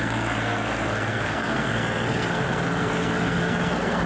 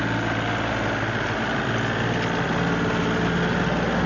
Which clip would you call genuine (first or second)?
second